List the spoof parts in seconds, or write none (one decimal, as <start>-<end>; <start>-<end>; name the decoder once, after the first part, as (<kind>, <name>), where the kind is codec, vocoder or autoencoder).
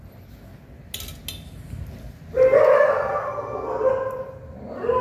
3.1-3.9 (codec, SNAC)